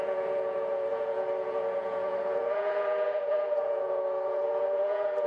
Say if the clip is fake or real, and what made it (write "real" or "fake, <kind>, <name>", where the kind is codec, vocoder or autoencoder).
fake, vocoder, Vocos